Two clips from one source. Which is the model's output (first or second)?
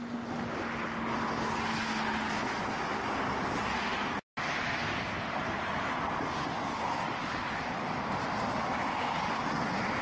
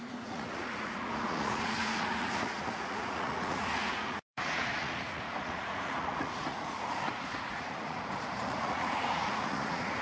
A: second